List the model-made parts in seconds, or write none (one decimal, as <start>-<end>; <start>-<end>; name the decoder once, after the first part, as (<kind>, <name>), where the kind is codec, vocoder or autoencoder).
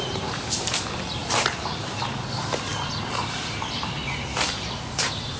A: 0.0-1.2 (vocoder, BigVGAN v2); 3.3-4.0; 4.5-5.4